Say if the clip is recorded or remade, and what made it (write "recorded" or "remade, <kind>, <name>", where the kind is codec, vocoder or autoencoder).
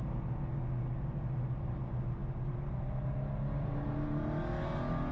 recorded